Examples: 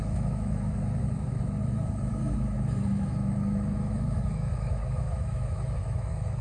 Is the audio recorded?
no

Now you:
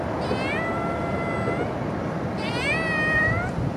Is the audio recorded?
yes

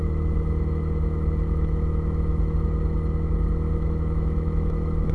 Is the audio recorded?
no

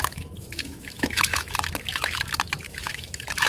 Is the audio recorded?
no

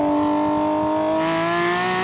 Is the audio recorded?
yes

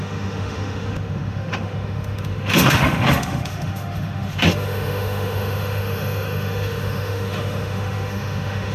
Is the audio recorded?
no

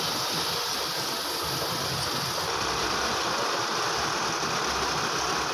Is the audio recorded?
yes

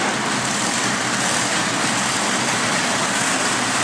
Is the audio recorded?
yes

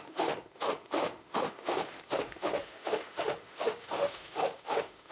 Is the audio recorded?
no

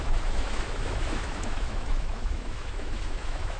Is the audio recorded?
no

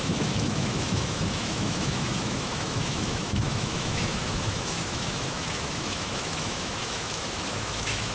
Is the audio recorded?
no